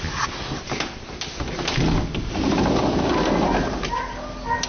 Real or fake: real